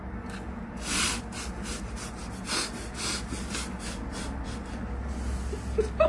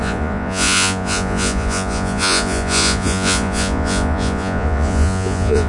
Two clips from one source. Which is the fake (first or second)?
second